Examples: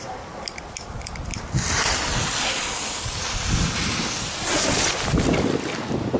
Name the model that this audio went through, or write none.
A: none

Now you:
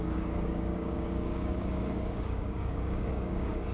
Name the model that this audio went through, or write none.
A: codec, DAC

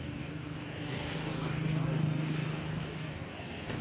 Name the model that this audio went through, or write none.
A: codec, DAC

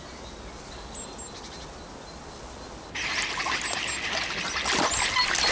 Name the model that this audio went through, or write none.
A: none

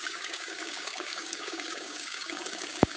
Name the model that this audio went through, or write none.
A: codec, DAC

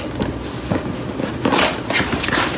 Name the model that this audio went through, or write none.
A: none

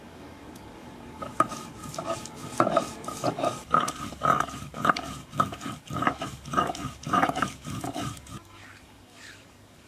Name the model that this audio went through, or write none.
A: codec, DAC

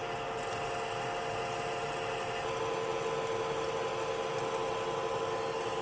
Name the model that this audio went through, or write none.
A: none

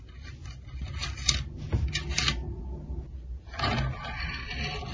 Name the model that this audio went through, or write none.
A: none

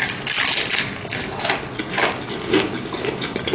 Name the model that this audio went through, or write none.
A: none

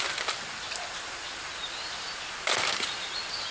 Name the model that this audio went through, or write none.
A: none